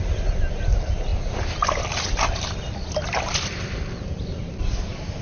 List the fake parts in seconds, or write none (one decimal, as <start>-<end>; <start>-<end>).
none